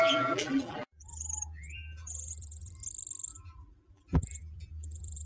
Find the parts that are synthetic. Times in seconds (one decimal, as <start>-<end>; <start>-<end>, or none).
0.0-2.7; 3.3-5.3